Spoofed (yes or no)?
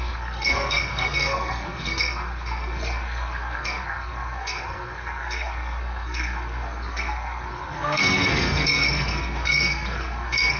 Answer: yes